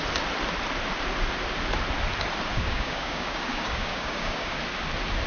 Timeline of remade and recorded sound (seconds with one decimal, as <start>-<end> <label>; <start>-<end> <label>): 0.0-2.5 recorded; 2.5-4.6 remade; 4.6-5.3 recorded